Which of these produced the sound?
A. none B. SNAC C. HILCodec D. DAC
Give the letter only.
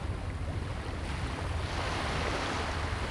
A